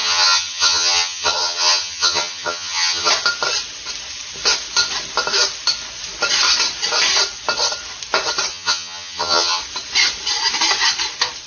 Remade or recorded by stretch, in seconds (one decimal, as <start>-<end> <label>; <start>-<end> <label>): 0.0-3.1 remade; 3.1-8.5 recorded; 8.5-9.6 remade; 9.6-11.5 recorded